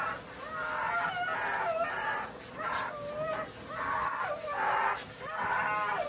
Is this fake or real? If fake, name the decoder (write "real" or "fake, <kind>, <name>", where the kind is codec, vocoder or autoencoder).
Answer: real